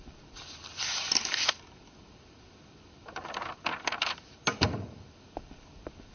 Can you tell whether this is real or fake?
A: real